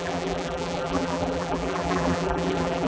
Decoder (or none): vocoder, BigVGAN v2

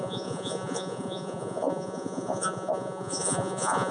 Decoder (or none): vocoder, Vocos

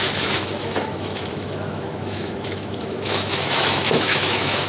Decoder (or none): autoencoder, DAC-VAE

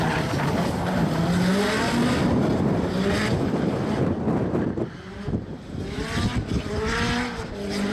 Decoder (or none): none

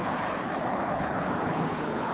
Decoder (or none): codec, HILCodec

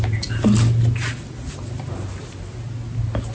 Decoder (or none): none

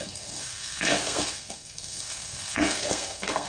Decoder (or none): codec, SNAC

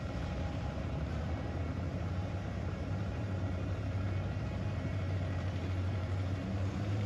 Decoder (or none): vocoder, BigVGAN v2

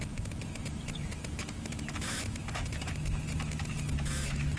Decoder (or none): autoencoder, DAC-VAE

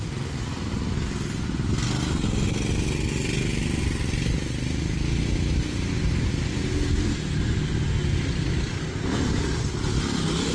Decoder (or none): none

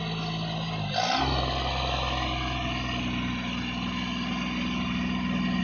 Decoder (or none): none